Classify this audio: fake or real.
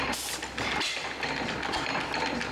real